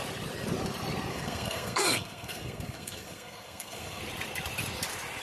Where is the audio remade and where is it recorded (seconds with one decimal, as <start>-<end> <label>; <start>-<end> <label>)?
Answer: 0.0-1.1 recorded; 1.1-4.0 remade; 4.0-5.2 recorded